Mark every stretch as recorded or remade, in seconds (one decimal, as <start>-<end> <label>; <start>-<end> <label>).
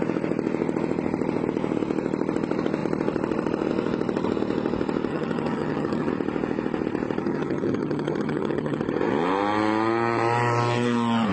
0.0-5.1 recorded; 5.1-6.1 remade; 6.1-7.2 recorded; 7.2-8.8 remade; 8.8-11.3 recorded